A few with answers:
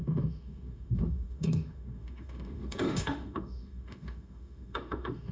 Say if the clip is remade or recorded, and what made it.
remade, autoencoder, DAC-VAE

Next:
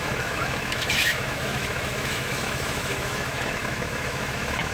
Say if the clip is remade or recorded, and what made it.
remade, autoencoder, DAC-VAE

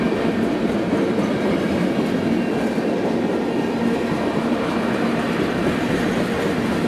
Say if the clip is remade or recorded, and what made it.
recorded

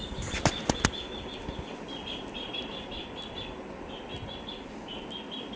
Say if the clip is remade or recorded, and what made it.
recorded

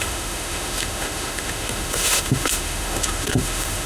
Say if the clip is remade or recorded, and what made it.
remade, autoencoder, DAC-VAE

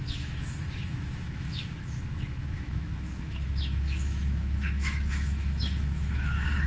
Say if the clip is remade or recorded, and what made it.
remade, autoencoder, DAC-VAE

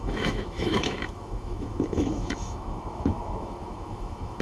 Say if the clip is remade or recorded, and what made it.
remade, autoencoder, DAC-VAE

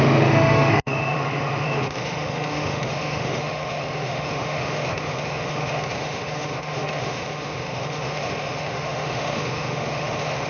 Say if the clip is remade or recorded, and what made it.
remade, autoencoder, DAC-VAE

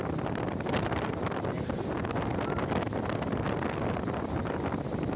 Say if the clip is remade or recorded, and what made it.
recorded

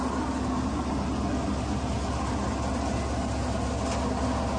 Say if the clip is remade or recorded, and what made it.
recorded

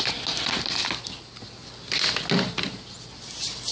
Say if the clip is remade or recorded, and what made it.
recorded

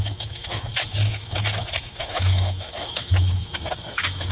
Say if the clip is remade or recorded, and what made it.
remade, autoencoder, DAC-VAE